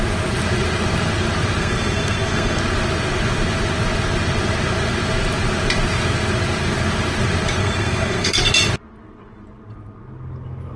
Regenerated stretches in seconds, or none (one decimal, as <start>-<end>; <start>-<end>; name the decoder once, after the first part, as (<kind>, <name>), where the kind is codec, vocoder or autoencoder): 1.6-2.6 (codec, SNAC); 7.6-8.5

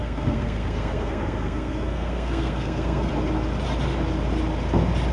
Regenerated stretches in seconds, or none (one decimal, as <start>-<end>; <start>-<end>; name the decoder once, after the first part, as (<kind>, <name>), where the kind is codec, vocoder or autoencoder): 0.0-3.1 (codec, SNAC)

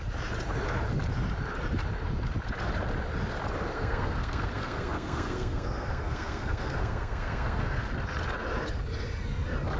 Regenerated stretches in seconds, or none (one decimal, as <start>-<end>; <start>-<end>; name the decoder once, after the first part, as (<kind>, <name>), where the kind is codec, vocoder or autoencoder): 3.7-7.9 (codec, SNAC)

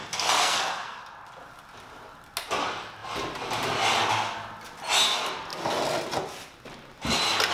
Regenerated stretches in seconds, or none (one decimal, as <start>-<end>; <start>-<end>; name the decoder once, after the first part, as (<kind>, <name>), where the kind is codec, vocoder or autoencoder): 0.0-1.0 (codec, SNAC)

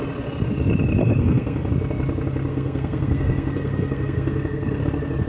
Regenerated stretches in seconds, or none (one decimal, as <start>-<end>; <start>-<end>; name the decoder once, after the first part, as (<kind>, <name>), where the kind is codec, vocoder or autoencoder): 1.0-1.7 (codec, SNAC); 2.5-4.8

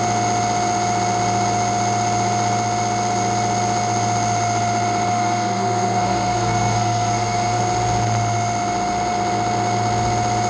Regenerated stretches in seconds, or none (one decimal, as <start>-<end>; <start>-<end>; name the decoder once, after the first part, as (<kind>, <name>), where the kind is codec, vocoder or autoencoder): 5.1-7.6 (codec, SNAC)

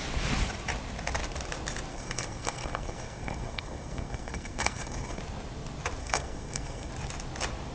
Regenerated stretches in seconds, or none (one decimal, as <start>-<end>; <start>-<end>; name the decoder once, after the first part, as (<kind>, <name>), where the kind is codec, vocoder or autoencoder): 1.9-5.2 (codec, SNAC); 6.0-6.9